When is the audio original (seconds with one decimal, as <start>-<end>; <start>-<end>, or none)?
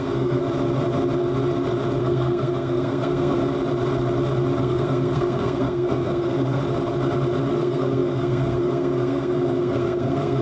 0.4-2.0; 3.4-4.6; 6.6-7.6